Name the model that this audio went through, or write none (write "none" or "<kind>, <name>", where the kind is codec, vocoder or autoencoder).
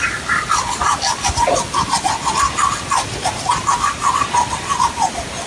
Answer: none